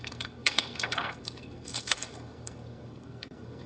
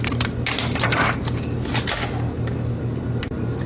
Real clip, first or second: second